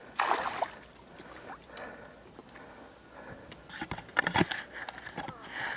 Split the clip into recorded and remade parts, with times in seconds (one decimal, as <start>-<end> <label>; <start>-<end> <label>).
0.0-5.8 recorded